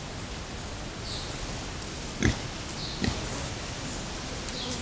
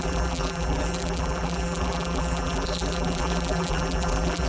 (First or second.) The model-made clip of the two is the second